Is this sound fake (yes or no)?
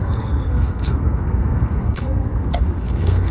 yes